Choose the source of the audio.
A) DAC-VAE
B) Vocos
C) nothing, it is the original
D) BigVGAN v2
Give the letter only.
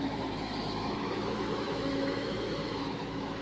A